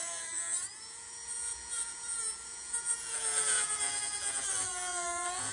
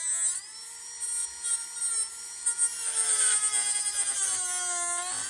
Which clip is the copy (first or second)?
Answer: first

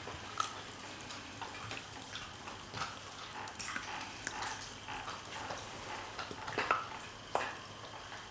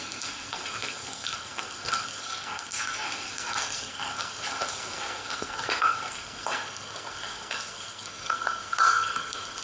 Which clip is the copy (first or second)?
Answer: second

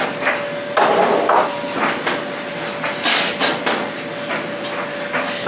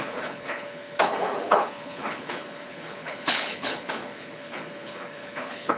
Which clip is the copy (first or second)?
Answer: second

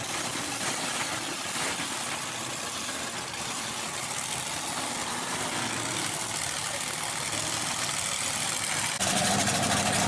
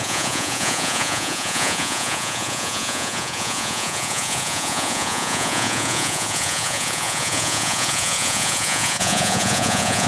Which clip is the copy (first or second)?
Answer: second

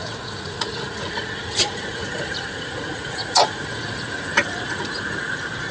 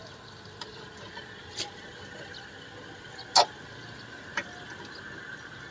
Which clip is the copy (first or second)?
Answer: first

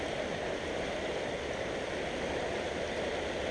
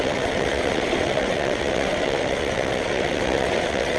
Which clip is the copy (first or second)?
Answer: second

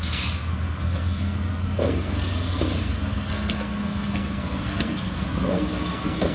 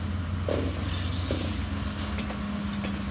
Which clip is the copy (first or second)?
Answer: first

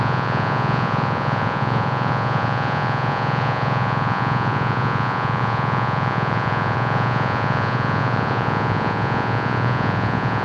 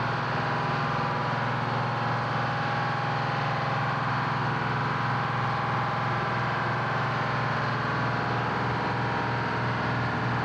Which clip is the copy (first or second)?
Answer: first